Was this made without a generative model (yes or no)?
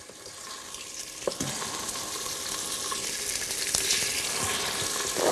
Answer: yes